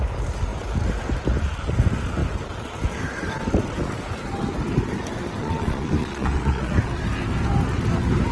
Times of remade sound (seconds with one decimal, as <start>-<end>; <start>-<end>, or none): 5.4-6.7